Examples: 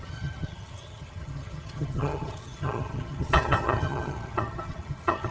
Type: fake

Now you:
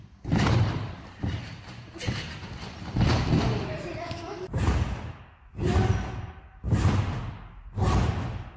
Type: real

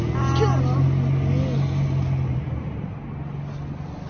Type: real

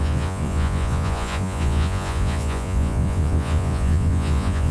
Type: fake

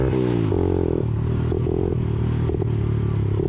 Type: real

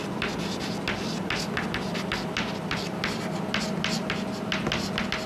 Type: real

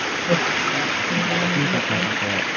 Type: real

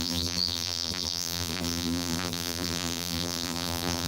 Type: fake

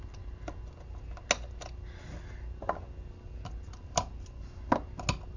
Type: real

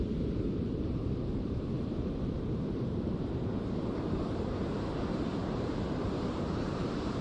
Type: fake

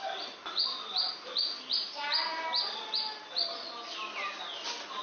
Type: real